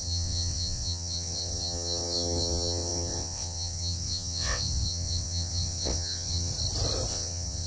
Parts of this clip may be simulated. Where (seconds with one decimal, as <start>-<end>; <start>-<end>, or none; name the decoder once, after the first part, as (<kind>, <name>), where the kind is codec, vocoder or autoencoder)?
0.0-6.5 (vocoder, WaveNeXt); 7.1-7.7